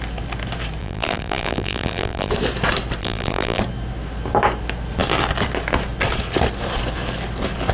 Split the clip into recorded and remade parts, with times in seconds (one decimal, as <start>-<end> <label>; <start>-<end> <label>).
0.0-0.8 recorded; 0.8-2.3 remade; 2.3-3.0 recorded; 3.0-3.6 remade; 3.6-7.7 recorded